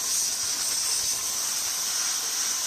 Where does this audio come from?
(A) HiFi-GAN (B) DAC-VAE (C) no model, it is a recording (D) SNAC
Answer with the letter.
C